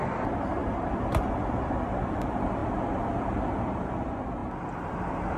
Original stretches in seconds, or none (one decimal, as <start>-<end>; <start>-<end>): 0.0-5.4